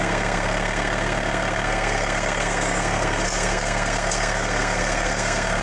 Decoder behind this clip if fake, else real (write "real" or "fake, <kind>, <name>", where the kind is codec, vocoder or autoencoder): fake, codec, SNAC